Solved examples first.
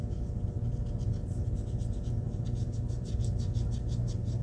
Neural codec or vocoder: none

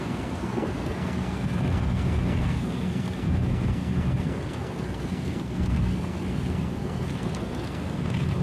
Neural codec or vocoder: codec, SNAC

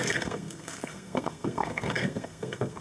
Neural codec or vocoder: codec, SNAC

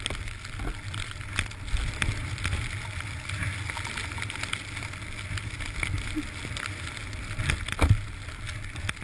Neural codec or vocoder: none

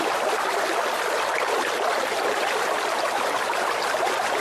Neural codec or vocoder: none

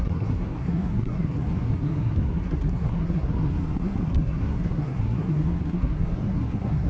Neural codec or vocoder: codec, SNAC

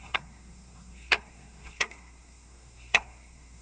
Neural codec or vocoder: codec, SNAC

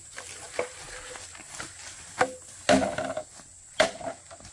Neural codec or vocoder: none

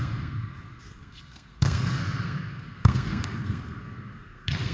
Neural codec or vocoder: codec, SNAC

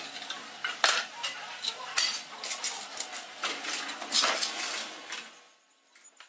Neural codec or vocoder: none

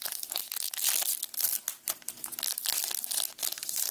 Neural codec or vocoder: none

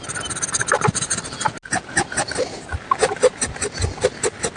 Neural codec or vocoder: none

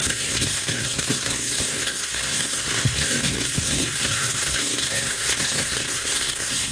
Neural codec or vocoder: codec, SNAC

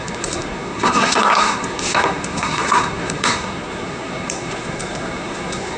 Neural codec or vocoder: codec, SNAC